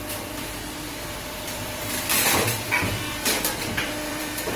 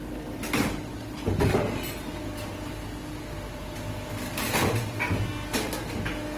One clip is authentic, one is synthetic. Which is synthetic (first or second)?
first